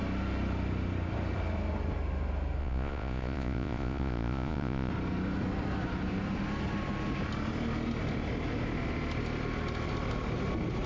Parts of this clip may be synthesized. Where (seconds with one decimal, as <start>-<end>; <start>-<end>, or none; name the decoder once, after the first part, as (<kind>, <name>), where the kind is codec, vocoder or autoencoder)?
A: 2.6-4.9 (vocoder, Vocos)